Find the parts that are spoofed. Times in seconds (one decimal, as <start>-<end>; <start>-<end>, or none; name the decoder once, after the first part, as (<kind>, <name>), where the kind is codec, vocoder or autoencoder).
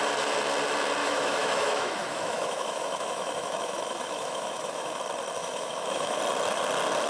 1.0-5.0 (autoencoder, DAC-VAE); 5.4-6.2